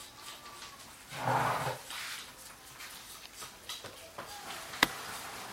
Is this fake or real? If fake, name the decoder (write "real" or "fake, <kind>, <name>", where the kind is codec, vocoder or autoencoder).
real